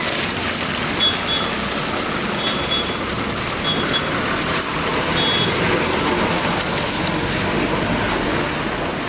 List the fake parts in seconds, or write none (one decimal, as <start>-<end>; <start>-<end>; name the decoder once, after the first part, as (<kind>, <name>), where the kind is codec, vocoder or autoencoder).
none